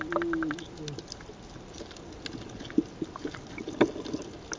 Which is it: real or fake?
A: real